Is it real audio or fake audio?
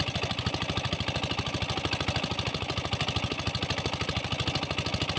real